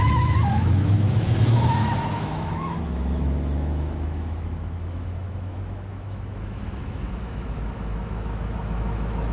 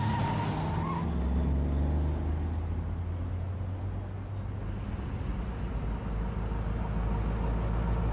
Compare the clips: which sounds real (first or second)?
second